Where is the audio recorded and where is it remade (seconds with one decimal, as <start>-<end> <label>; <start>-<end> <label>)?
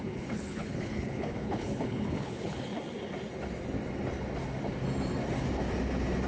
0.0-2.7 remade; 2.7-6.3 recorded